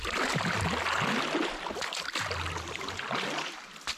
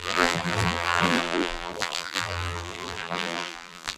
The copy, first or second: second